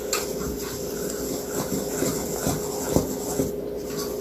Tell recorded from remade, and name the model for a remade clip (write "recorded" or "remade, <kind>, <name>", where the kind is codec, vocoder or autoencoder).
recorded